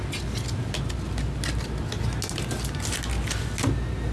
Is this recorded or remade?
recorded